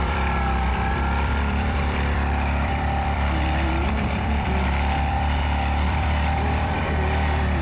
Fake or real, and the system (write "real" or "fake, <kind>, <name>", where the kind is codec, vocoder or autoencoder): fake, vocoder, BigVGAN v2